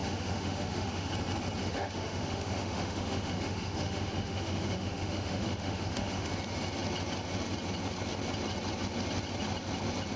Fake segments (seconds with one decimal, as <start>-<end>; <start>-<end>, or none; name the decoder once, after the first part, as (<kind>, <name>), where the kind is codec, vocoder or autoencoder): 0.0-1.1 (autoencoder, DAC-VAE); 1.6-6.3